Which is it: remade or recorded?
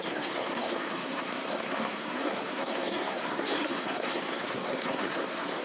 remade